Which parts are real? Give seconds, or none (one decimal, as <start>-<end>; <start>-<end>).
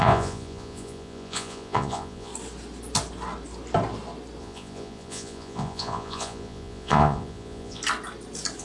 2.3-4.4; 7.8-8.6